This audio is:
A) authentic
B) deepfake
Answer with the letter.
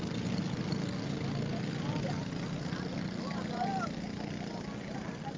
A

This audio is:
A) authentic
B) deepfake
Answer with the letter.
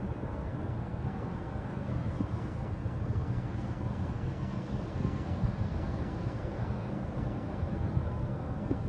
B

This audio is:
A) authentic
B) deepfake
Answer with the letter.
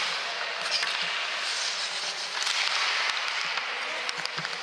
A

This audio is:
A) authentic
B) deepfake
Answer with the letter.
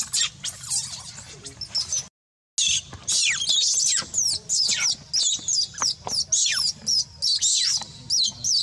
A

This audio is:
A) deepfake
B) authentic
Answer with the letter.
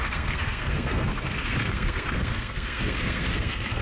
A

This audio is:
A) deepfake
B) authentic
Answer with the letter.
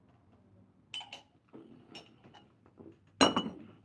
B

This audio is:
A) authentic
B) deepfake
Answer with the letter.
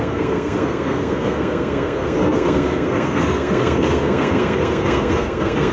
B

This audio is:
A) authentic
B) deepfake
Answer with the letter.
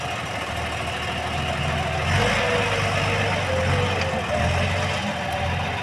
A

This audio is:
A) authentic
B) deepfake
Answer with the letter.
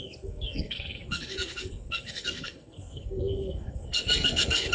B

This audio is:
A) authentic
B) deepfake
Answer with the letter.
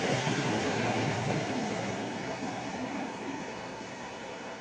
B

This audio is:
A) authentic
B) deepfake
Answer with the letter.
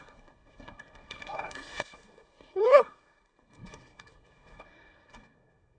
B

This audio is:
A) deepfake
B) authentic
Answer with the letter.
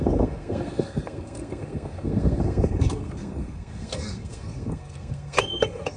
A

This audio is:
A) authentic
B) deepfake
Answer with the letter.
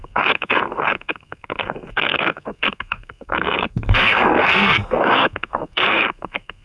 B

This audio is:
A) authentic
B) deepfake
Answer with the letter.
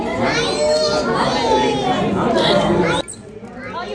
A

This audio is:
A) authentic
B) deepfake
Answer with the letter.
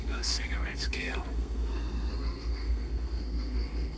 B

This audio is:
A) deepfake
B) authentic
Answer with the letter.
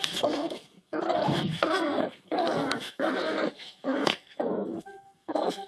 A